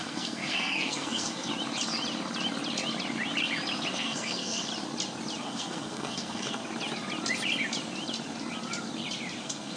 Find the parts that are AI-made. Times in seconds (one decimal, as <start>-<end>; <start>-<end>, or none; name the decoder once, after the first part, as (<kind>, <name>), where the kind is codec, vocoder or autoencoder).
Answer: 0.0-1.5 (codec, SNAC); 3.9-4.7; 5.4-6.6; 9.4-9.8